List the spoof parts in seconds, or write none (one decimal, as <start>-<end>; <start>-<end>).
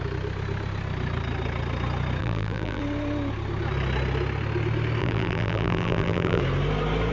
2.2-2.8; 5.0-6.4